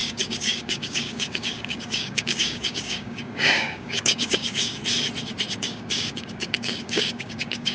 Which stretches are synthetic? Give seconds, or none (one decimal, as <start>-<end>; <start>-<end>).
0.0-4.8; 5.6-7.7